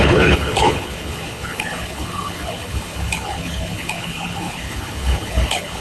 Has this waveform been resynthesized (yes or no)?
yes